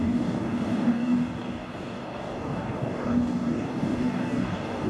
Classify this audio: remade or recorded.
remade